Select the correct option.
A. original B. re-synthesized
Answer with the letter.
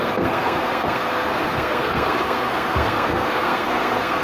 B